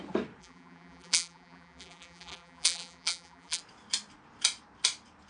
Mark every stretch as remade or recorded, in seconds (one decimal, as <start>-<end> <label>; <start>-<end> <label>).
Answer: 0.0-0.4 recorded; 0.4-3.6 remade; 3.6-5.3 recorded